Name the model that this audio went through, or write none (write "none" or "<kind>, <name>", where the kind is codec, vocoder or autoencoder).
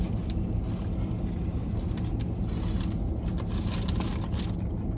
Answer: none